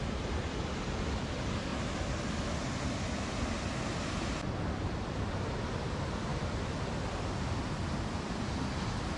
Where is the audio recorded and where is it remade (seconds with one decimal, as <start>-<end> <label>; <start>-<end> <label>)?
0.0-9.2 recorded